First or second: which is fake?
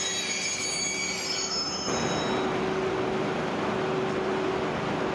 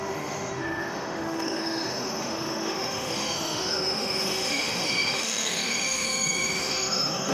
second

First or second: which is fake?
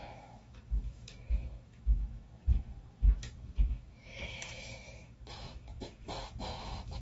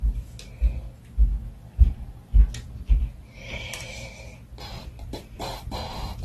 first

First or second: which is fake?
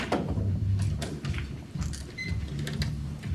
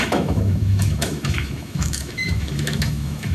second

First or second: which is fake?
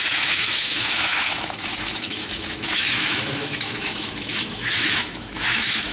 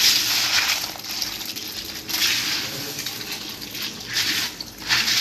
first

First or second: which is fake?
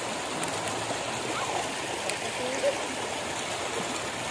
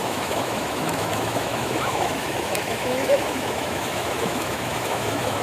second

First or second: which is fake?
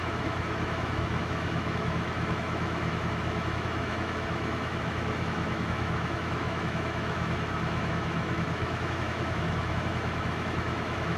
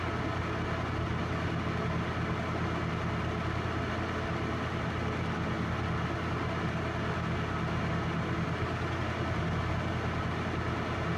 first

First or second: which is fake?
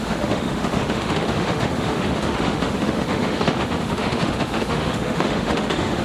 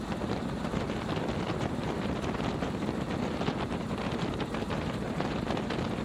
first